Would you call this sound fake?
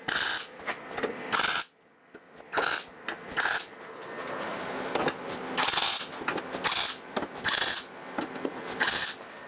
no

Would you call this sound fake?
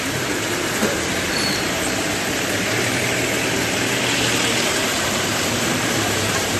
yes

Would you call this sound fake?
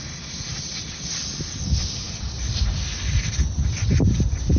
yes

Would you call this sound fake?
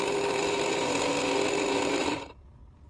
no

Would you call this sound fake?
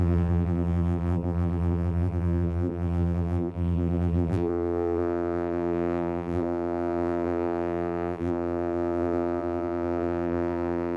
yes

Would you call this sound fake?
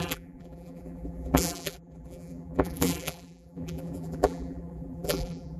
yes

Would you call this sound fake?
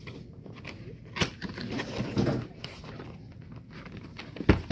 no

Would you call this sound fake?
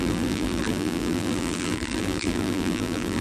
yes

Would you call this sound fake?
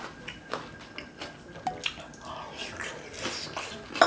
no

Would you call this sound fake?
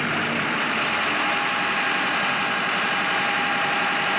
no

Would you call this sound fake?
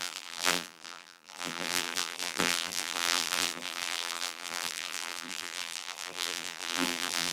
yes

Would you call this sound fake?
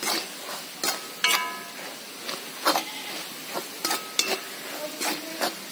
no